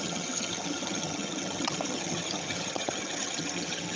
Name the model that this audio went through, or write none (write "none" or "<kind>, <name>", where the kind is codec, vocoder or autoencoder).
vocoder, HiFi-GAN